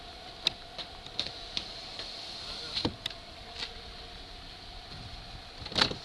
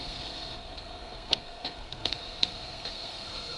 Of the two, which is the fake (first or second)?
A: second